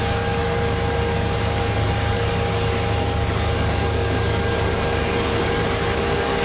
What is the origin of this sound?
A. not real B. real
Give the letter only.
A